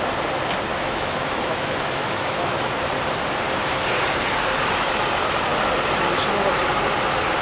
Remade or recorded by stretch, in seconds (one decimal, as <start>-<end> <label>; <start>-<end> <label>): 0.0-0.7 recorded; 0.7-2.8 remade; 2.8-7.4 recorded

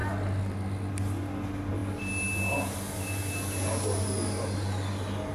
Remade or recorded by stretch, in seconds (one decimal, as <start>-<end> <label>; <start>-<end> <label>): 0.0-5.3 recorded